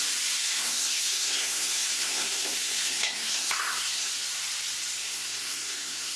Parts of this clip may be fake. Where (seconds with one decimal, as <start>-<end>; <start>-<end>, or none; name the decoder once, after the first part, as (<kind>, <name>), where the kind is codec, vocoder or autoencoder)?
0.4-4.1 (codec, SNAC); 5.0-6.2